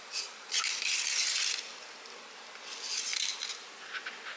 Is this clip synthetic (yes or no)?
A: no